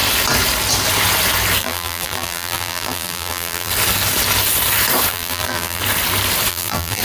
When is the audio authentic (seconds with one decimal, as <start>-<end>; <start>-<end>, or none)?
0.0-1.6; 3.7-5.1; 5.8-6.5

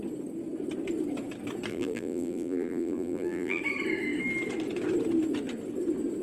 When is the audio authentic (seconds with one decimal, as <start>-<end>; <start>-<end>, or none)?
0.0-1.7; 3.6-6.2

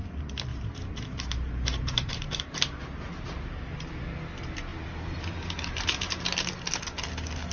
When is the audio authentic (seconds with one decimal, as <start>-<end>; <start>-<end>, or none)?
0.0-0.5; 4.1-4.7; 6.2-7.5

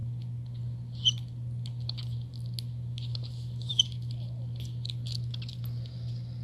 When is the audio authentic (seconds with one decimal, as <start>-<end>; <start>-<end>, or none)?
0.0-6.4

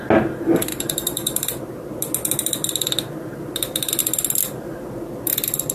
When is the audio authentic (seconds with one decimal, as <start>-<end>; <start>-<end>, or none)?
0.0-0.7; 1.6-5.7

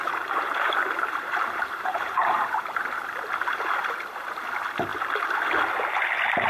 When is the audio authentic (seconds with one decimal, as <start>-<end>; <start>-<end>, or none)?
2.8-6.5

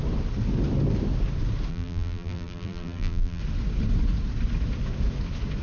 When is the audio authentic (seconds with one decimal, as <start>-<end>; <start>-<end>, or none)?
0.0-1.7; 3.4-5.6

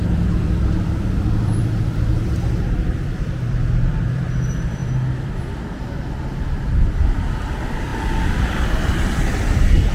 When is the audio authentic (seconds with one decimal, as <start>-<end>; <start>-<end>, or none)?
7.9-8.4